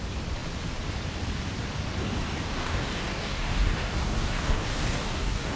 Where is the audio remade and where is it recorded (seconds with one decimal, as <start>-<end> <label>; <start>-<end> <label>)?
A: 0.0-2.0 recorded; 2.0-5.6 remade